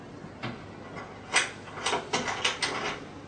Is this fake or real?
real